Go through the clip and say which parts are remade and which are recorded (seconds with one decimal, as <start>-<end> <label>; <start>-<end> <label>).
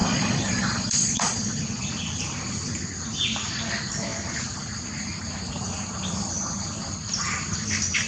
0.0-1.6 remade; 1.6-8.1 recorded